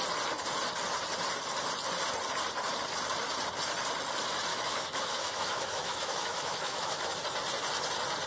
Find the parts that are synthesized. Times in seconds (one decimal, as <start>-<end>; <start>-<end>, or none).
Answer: 4.5-7.1